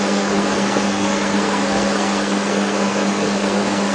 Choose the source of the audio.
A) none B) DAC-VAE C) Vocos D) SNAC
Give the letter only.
D